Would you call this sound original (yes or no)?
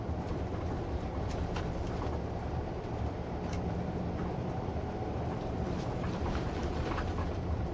no